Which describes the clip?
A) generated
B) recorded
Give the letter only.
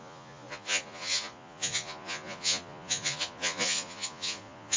A